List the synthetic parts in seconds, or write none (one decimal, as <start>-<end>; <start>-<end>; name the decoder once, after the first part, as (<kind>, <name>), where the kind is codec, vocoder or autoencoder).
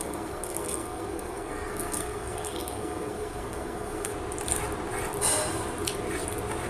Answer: 0.0-4.1 (codec, SNAC)